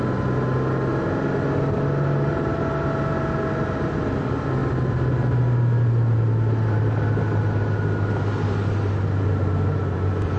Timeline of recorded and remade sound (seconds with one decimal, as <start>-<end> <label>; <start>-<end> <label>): 0.0-10.4 recorded